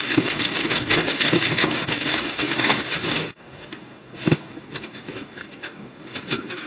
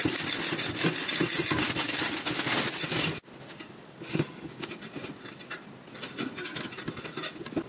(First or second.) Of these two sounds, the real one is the second